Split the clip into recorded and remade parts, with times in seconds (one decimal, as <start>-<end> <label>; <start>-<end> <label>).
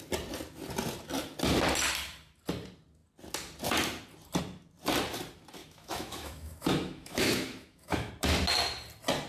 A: 0.0-5.6 recorded; 5.6-8.1 remade; 8.1-9.3 recorded